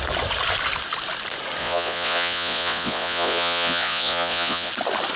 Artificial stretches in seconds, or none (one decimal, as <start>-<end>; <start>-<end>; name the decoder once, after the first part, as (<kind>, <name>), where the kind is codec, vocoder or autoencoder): 1.6-4.7 (vocoder, Vocos)